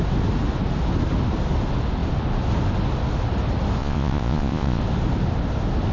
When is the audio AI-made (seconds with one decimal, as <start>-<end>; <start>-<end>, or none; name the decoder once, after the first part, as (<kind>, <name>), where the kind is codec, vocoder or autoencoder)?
3.8-4.8 (vocoder, Vocos)